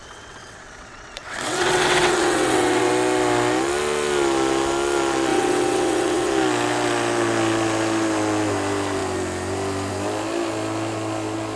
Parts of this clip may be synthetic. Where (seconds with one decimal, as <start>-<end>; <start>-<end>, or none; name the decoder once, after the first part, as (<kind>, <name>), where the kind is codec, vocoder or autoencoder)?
0.0-2.9 (vocoder, WaveNeXt); 5.3-6.3